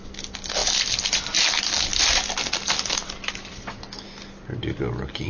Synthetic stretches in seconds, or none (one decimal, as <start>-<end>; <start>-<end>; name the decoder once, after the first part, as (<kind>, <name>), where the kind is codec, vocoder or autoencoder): none